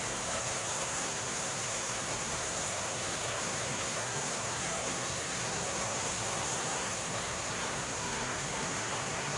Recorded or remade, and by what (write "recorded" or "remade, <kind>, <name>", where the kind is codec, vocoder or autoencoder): remade, codec, SNAC